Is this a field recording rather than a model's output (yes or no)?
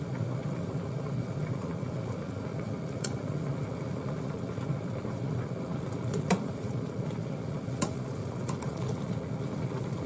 no